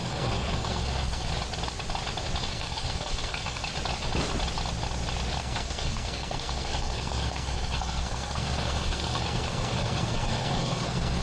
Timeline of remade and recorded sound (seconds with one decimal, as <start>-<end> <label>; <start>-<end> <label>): 0.0-1.3 remade; 1.3-2.4 recorded; 2.4-3.6 remade; 3.6-5.4 recorded; 5.4-11.2 remade